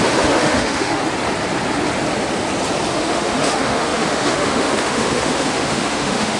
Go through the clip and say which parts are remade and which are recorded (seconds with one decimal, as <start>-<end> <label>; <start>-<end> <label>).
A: 0.0-1.0 remade; 1.0-2.9 recorded; 2.9-6.4 remade